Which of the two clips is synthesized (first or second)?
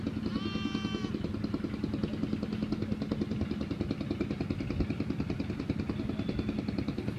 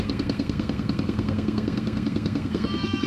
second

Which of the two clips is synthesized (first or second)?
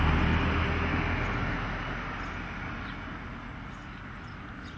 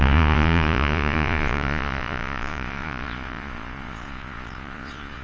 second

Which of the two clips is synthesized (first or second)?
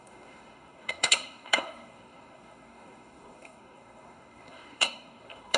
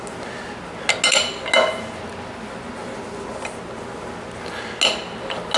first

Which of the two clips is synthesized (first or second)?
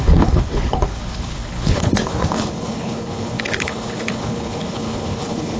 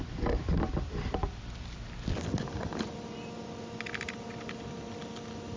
first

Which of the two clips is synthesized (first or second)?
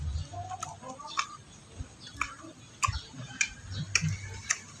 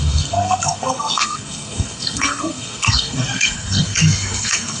second